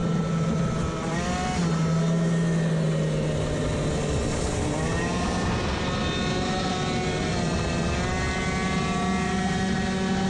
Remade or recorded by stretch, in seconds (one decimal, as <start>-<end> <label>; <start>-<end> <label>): 0.0-10.3 recorded